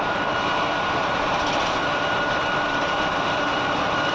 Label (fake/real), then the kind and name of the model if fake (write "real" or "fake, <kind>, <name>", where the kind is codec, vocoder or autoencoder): fake, vocoder, BigVGAN v2